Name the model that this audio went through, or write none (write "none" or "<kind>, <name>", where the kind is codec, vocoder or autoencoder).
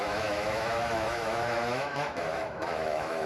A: autoencoder, DAC-VAE